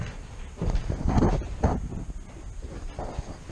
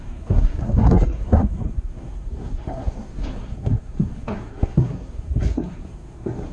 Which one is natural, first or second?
first